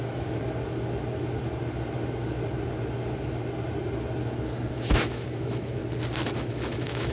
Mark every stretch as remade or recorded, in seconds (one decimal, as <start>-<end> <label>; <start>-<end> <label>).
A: 0.0-0.4 remade; 0.4-4.7 recorded; 4.7-5.8 remade; 5.8-6.3 recorded; 6.3-7.1 remade